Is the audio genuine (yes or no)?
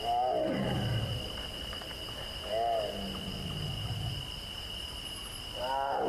yes